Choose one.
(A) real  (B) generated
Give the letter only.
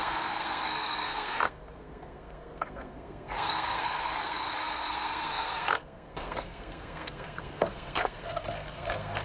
B